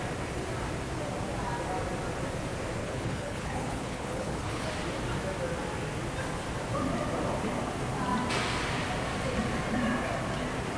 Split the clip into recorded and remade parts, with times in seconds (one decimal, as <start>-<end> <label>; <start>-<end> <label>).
0.0-2.8 recorded; 2.8-4.7 remade; 4.7-10.8 recorded